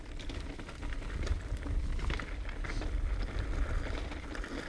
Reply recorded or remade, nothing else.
recorded